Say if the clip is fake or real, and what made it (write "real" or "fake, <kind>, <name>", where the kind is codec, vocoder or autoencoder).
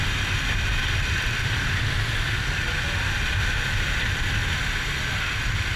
real